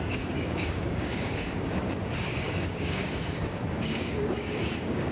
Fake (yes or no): yes